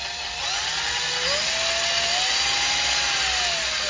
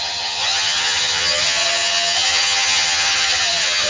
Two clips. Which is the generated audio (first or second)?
second